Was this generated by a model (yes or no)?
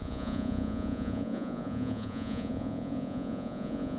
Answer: yes